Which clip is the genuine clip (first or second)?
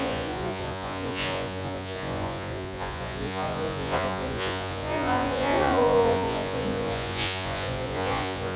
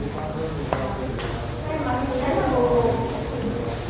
second